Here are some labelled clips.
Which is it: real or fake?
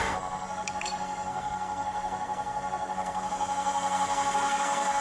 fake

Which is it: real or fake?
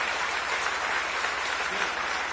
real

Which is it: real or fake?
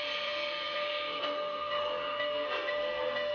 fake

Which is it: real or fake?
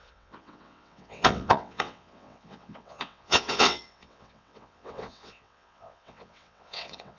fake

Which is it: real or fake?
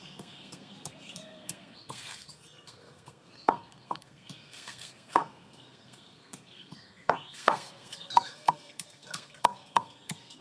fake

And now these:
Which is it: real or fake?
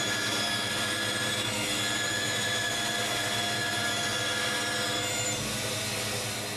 real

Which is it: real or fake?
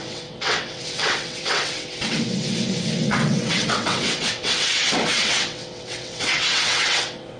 fake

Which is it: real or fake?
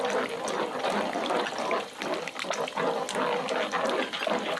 real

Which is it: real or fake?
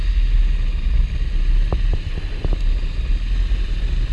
real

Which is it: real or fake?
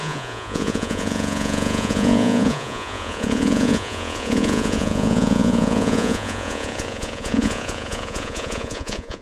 fake